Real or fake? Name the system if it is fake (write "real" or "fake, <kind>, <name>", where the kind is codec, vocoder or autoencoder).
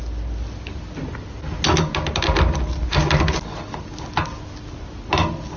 real